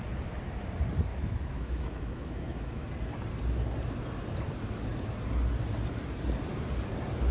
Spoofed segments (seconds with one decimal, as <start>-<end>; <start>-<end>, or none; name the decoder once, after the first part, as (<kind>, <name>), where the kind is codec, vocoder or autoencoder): 1.1-2.9 (autoencoder, DAC-VAE)